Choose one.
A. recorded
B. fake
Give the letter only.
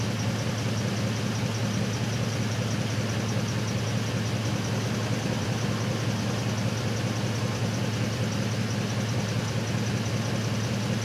A